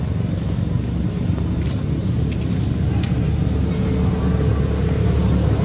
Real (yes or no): yes